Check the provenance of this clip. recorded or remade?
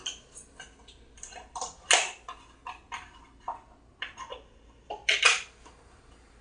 recorded